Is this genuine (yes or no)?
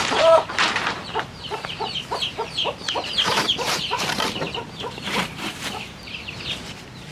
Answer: no